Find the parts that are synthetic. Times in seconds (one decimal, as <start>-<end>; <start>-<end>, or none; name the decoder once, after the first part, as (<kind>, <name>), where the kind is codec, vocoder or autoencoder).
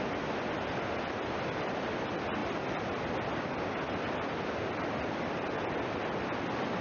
none